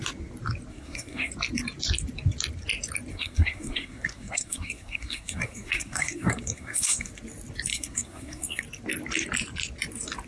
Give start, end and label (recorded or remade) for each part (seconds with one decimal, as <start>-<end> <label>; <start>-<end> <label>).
0.0-0.7 recorded; 0.7-1.3 remade; 1.3-3.1 recorded; 3.1-7.1 remade; 7.1-7.7 recorded; 7.7-8.6 remade; 8.6-10.3 recorded